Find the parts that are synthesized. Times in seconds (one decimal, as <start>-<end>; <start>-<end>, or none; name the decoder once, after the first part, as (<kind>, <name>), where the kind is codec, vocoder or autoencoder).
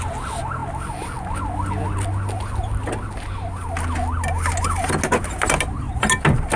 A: none